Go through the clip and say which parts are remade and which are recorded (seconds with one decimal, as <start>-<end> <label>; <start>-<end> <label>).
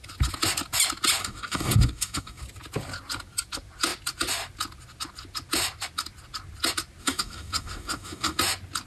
0.0-1.2 recorded; 1.2-2.4 remade; 2.4-7.0 recorded; 7.0-8.4 remade; 8.4-8.9 recorded